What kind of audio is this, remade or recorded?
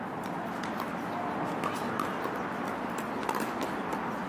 recorded